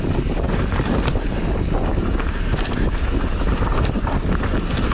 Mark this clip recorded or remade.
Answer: recorded